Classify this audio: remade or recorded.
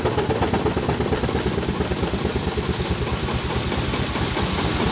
recorded